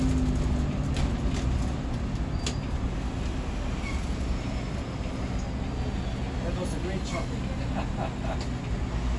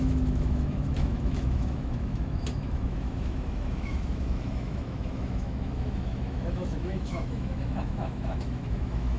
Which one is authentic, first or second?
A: first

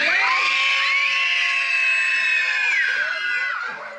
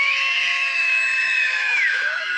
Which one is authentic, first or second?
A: first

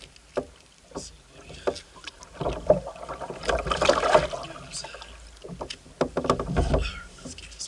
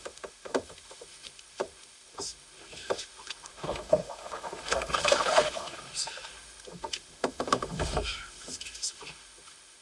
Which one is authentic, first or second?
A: first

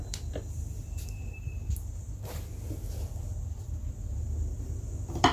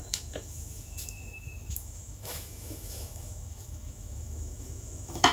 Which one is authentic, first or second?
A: first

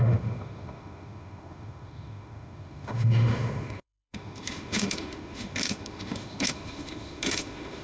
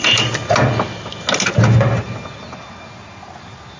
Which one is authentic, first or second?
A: second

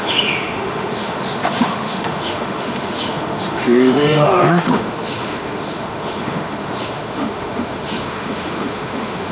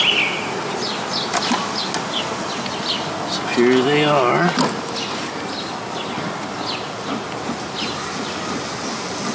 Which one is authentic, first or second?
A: second